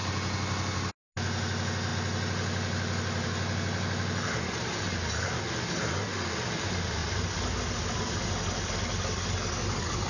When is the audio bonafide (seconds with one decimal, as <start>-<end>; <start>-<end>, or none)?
0.0-10.1